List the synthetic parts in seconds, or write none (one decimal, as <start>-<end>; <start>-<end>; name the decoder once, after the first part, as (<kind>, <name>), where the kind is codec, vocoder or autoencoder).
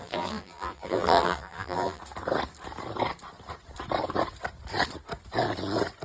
0.0-2.0 (vocoder, BigVGAN v2)